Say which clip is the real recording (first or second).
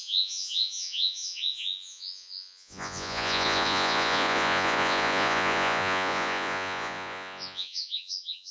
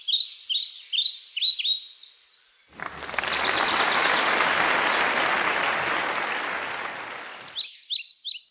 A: second